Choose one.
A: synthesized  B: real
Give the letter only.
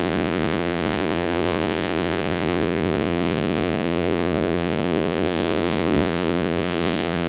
A